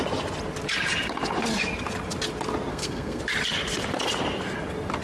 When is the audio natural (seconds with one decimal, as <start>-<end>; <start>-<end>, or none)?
0.0-2.7; 3.2-5.0